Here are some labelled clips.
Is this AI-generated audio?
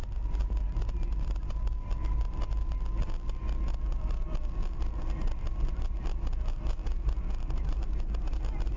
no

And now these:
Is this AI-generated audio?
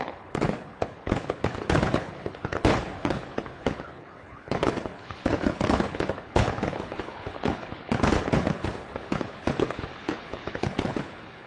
yes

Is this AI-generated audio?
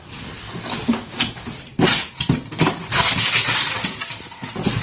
no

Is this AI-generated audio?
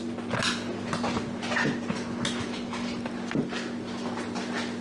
no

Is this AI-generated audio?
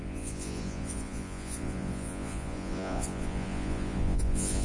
yes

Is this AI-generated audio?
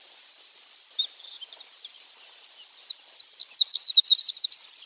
no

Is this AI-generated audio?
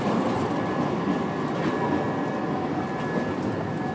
no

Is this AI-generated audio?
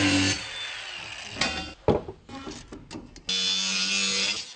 no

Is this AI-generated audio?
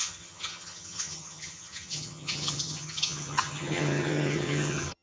yes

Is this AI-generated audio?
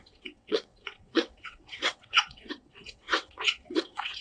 yes